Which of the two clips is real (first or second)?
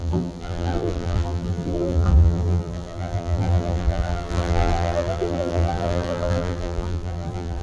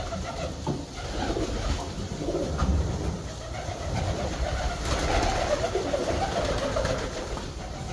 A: second